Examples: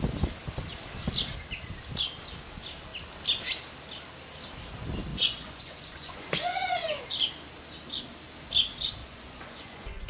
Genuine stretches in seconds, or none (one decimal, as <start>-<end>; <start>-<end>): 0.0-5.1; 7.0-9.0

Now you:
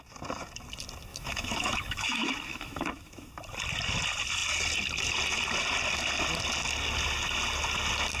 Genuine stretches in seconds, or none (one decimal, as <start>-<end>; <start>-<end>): 0.0-1.1; 3.3-8.2

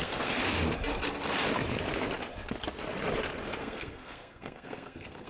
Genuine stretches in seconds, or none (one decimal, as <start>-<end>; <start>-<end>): 0.4-3.6

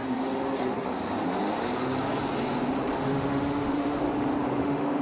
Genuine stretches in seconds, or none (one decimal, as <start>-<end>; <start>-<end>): 0.0-3.0; 4.0-4.6